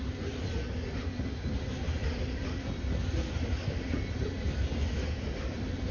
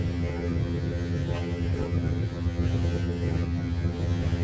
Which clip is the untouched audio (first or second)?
first